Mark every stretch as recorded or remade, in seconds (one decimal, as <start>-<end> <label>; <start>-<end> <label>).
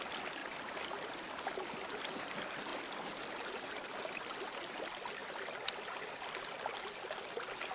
0.0-7.7 recorded